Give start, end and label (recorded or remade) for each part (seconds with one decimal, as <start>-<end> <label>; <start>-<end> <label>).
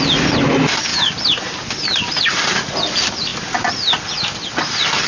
0.0-5.1 recorded